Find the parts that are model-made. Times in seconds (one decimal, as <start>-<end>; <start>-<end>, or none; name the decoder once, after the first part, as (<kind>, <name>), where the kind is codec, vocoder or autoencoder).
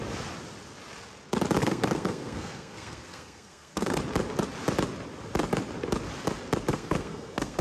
1.6-4.0 (codec, SNAC); 6.7-7.6